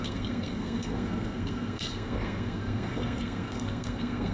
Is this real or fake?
fake